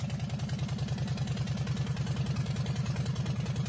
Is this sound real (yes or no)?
yes